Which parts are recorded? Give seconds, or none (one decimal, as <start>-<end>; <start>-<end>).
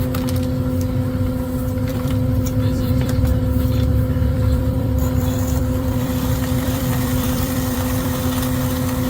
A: 0.0-1.9; 3.2-3.9; 8.2-9.1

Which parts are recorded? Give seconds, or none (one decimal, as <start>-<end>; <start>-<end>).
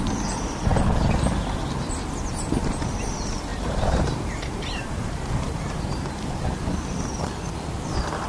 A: 0.0-3.5; 6.2-8.3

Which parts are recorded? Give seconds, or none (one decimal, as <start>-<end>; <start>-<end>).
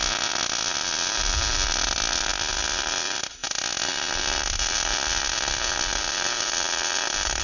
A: 0.0-7.4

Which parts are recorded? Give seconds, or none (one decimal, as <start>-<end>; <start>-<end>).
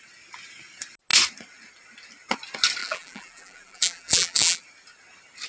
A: 0.0-2.8; 4.6-5.5